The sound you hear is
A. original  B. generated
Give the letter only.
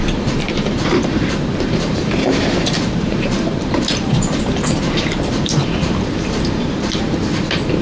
B